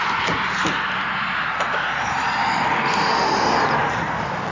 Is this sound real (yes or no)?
yes